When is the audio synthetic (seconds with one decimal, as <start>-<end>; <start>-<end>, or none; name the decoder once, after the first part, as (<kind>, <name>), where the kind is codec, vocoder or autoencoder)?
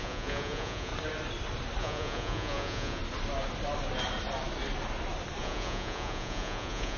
0.0-0.9 (vocoder, Vocos); 1.8-3.0; 5.4-7.0